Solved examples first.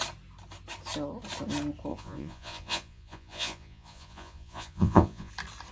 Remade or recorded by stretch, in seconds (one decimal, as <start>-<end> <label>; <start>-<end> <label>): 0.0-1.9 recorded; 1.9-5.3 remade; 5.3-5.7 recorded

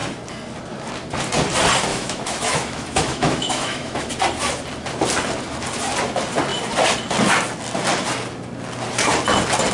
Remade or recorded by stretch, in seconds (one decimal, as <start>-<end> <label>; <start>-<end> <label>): 0.0-1.9 recorded; 1.9-4.1 remade; 4.1-9.7 recorded

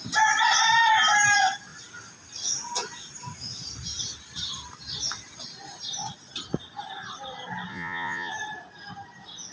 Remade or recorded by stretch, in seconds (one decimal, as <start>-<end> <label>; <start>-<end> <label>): 0.0-7.7 recorded; 7.7-8.3 remade; 8.3-9.5 recorded

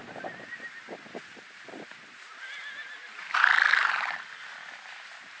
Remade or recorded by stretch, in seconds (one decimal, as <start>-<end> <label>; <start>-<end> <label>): 0.0-5.4 recorded

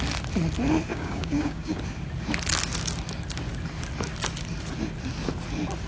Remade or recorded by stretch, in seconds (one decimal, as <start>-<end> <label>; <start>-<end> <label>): 0.0-0.9 recorded; 0.9-1.8 remade; 1.8-5.9 recorded